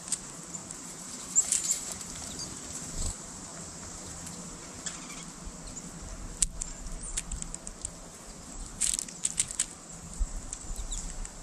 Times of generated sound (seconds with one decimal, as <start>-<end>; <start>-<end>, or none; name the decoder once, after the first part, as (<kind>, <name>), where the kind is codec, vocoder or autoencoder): 0.0-3.5 (vocoder, BigVGAN v2); 4.1-4.6; 9.8-11.4